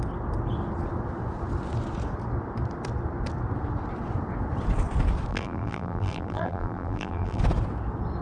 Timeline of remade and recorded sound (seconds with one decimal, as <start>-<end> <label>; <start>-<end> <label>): 0.0-5.3 recorded; 5.3-7.4 remade; 7.4-8.2 recorded